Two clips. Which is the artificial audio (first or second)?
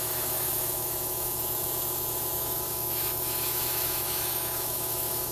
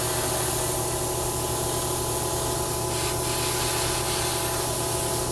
first